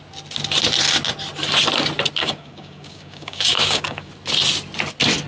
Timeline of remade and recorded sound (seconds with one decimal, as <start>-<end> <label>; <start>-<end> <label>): 0.0-2.2 recorded; 2.2-4.1 remade; 4.1-5.3 recorded